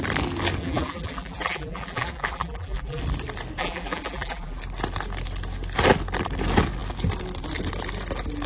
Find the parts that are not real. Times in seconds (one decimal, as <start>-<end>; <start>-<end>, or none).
0.6-3.0; 3.6-4.6